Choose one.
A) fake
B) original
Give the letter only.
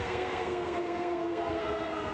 A